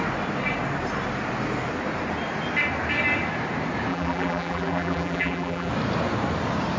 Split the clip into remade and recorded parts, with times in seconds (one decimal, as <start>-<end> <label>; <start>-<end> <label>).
0.0-3.9 recorded; 3.9-5.7 remade; 5.7-6.8 recorded